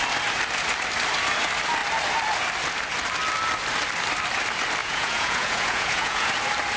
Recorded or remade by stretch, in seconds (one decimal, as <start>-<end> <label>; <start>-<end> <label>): 0.0-4.8 recorded; 4.8-6.3 remade; 6.3-6.8 recorded

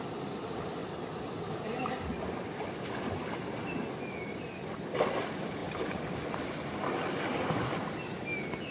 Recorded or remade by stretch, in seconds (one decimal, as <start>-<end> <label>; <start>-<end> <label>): 0.0-8.7 recorded